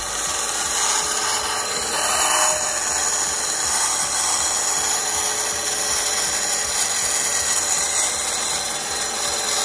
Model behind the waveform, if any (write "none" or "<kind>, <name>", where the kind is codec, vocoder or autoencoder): none